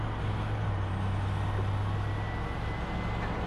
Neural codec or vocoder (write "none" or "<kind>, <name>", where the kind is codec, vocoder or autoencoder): none